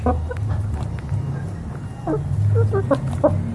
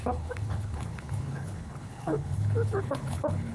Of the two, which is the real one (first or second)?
first